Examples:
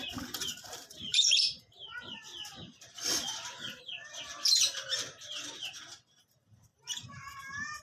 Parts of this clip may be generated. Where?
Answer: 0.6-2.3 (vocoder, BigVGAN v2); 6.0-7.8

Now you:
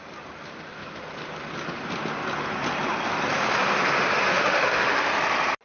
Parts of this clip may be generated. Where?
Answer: 4.3-5.1 (autoencoder, DAC-VAE)

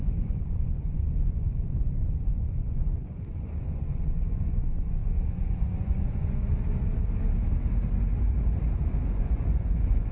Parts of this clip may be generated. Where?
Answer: 0.0-6.5 (vocoder, Vocos); 8.8-10.1

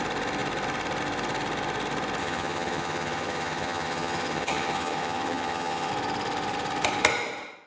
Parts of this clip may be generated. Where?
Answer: 2.2-5.9 (vocoder, HiFi-GAN)

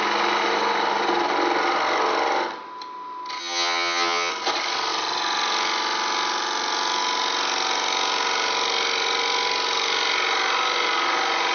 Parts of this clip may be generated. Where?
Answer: 3.4-4.3 (vocoder, HiFi-GAN)

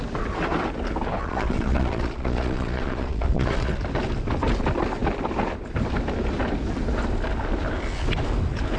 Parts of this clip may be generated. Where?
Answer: 1.2-3.8 (vocoder, Vocos)